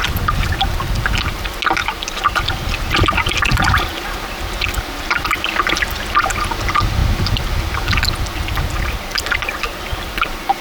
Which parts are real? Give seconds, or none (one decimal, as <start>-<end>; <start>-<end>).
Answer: 0.0-1.8; 2.4-10.6